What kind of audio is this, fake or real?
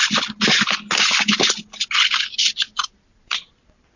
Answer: real